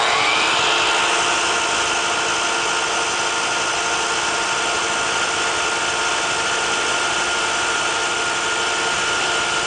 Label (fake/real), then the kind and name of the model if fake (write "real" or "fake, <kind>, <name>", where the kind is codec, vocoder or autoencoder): real